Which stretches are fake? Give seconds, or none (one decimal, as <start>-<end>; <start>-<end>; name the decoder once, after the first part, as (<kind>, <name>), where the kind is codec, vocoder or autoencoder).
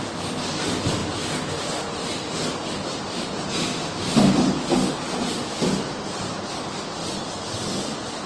none